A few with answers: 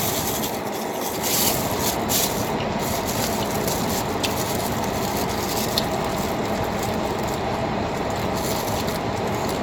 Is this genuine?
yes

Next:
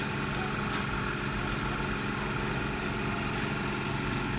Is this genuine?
yes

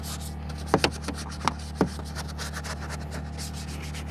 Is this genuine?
yes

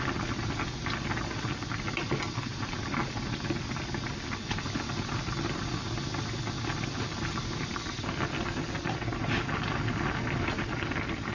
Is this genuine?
yes